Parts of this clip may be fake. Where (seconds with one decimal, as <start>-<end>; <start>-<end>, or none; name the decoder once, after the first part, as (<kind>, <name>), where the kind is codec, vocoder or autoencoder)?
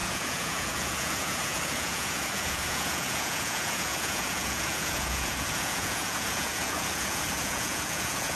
0.0-8.4 (vocoder, Vocos)